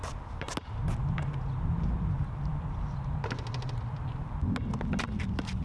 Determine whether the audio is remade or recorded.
recorded